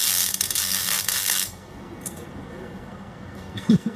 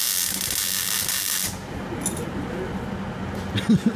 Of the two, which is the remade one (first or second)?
first